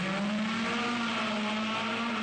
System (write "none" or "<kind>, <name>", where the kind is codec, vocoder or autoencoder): none